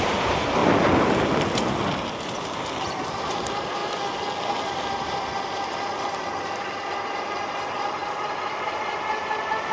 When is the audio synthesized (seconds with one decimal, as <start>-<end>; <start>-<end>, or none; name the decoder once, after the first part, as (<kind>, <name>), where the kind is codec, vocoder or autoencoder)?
0.0-3.8 (vocoder, BigVGAN v2); 4.7-6.8; 7.4-9.7